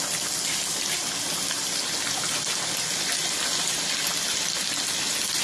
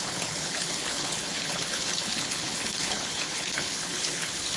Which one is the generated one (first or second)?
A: second